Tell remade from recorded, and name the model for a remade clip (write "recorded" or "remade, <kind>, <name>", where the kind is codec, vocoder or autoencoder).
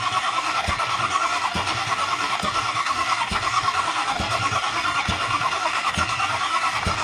remade, codec, DAC